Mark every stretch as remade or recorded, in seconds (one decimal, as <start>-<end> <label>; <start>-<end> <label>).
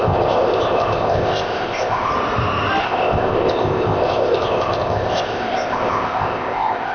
0.0-2.1 remade; 2.1-2.8 recorded; 2.8-6.9 remade